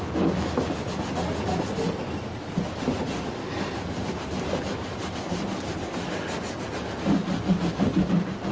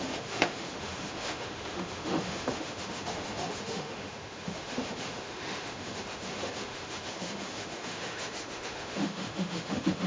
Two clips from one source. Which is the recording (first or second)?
first